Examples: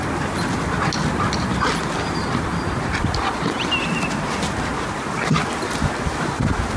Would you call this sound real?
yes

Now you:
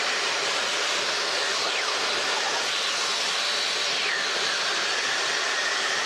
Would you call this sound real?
yes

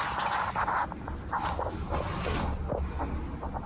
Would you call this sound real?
yes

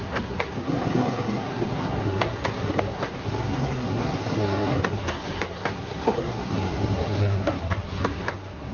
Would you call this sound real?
no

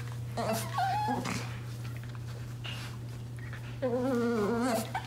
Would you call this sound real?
yes